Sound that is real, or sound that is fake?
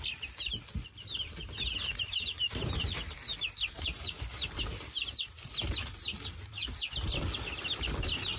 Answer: fake